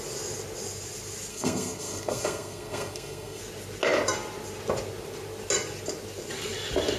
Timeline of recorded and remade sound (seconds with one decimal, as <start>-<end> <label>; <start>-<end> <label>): 0.0-1.3 recorded; 1.3-3.4 remade; 3.4-7.0 recorded